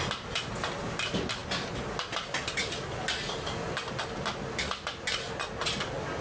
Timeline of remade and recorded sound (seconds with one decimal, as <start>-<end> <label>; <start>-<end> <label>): 0.0-6.2 recorded